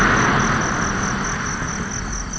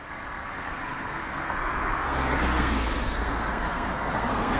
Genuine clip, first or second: first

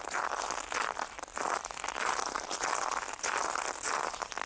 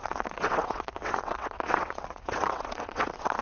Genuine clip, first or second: first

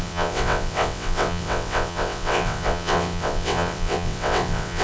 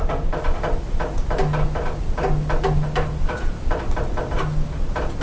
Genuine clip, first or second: second